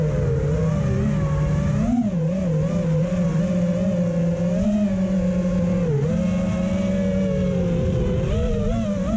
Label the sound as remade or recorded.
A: recorded